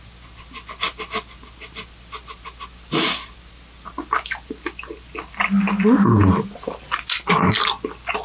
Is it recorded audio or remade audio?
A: recorded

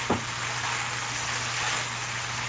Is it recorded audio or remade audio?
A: recorded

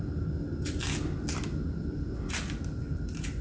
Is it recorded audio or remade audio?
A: recorded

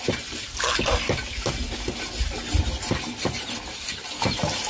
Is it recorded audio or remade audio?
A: recorded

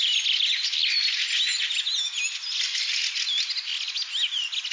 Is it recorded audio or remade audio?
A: recorded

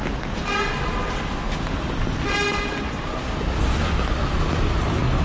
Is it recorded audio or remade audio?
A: recorded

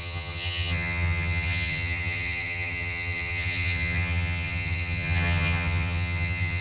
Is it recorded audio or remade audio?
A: remade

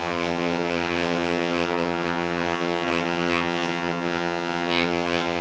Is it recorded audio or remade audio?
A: remade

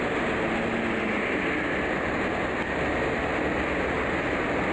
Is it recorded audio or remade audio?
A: recorded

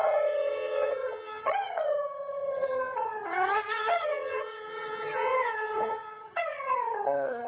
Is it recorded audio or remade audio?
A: remade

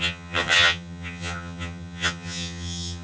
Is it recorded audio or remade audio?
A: remade